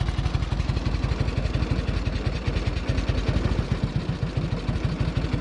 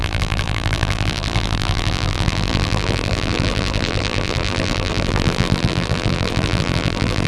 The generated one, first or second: second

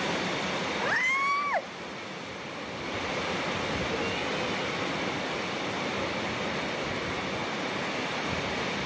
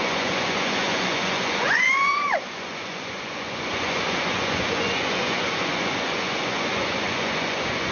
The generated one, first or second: second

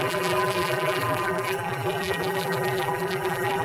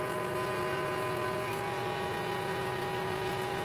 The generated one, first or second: first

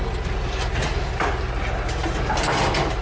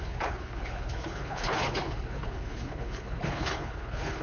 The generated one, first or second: second